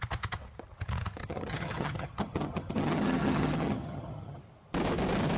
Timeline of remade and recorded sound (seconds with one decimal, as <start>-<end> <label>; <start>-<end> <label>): 0.0-1.2 recorded; 1.2-4.4 remade; 4.4-5.4 recorded